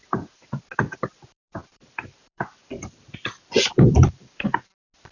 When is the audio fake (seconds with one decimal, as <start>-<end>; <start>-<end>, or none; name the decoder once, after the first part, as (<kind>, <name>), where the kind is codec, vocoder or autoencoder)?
1.2-4.3 (vocoder, BigVGAN v2)